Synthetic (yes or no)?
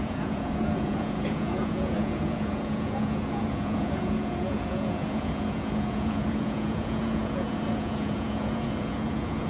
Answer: yes